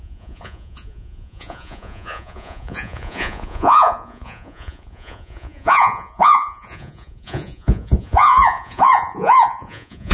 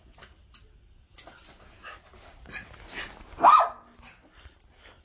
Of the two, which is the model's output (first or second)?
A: first